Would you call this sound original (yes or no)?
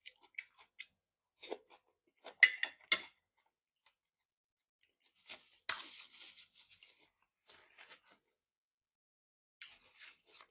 yes